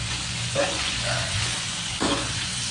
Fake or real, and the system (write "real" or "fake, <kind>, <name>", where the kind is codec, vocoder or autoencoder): fake, vocoder, Vocos